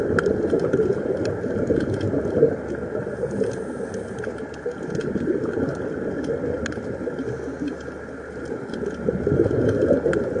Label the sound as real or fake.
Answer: real